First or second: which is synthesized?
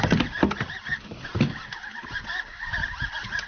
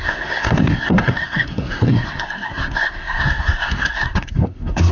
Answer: second